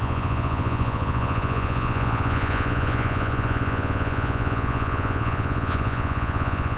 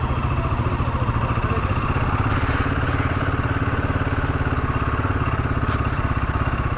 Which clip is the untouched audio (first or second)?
second